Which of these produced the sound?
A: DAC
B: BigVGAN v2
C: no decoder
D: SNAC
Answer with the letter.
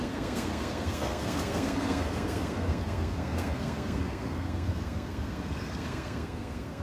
D